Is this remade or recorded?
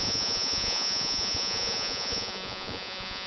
remade